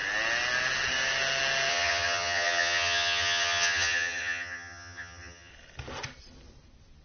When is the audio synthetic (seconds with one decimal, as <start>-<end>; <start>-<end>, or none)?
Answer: 1.7-5.5